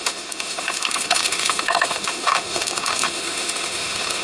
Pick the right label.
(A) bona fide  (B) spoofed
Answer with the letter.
B